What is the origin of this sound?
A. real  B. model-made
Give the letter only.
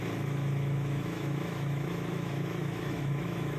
B